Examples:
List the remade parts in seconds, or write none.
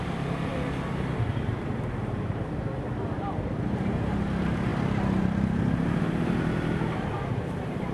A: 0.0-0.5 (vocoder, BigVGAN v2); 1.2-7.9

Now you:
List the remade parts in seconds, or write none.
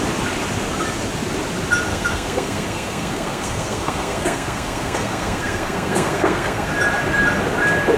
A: 1.9-6.7 (codec, SNAC)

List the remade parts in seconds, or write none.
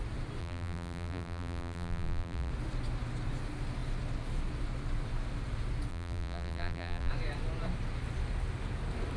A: 0.4-2.5 (vocoder, BigVGAN v2); 5.9-7.1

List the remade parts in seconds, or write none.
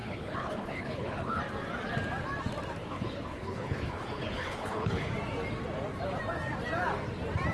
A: 0.0-1.4 (codec, HILCodec); 2.8-5.1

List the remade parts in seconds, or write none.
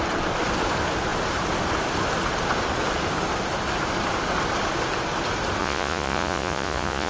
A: 5.6-7.1 (vocoder, Vocos)